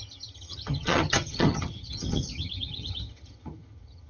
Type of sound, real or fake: fake